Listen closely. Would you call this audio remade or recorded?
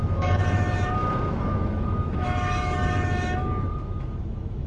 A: remade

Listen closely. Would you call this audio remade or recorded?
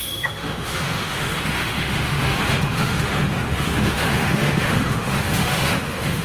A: remade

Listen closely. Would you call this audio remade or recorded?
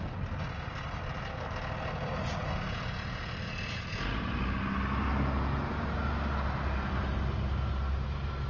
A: recorded